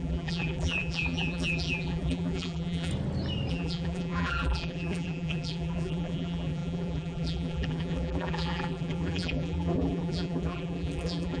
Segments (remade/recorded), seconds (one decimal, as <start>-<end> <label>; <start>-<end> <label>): 0.0-2.9 remade; 2.9-3.5 recorded; 3.5-11.4 remade